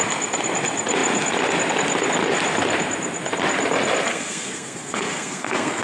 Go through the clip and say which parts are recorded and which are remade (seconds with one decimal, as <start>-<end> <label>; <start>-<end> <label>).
0.0-4.1 recorded; 4.1-5.8 remade